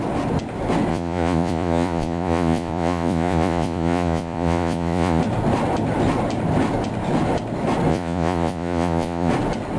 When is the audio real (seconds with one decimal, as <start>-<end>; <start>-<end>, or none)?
0.0-0.9; 5.2-7.9; 9.3-9.8